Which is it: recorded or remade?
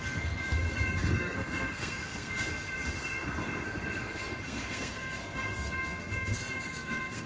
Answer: remade